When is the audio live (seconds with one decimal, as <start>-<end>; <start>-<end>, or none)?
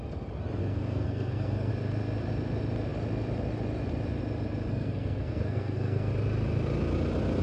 0.0-0.6; 1.7-4.7; 6.1-7.4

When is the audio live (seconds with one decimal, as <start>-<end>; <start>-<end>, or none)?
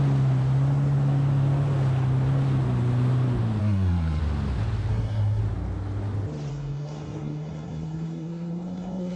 0.0-3.6; 4.2-4.9; 5.4-6.5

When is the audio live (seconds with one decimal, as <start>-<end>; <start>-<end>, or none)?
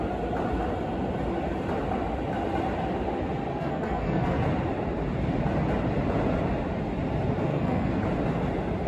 0.0-3.5; 4.4-7.5; 8.0-8.9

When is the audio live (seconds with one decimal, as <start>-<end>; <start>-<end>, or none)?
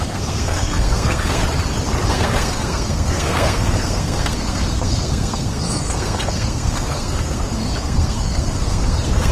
1.4-2.1